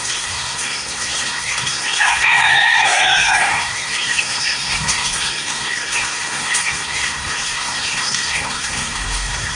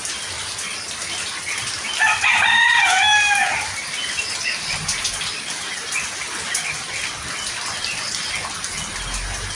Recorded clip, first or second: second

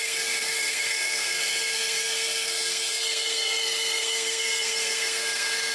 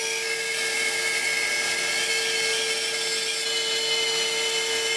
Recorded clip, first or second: second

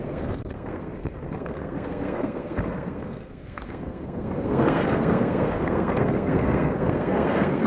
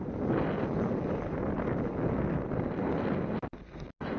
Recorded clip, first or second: second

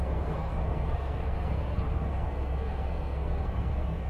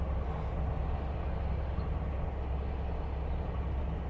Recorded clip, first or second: second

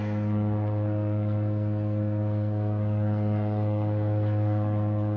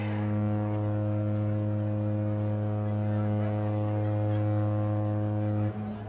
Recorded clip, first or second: second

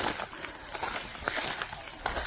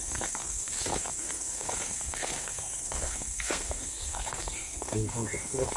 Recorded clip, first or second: first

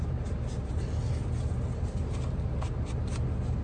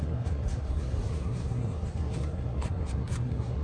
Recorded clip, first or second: first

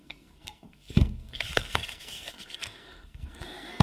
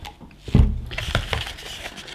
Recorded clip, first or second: second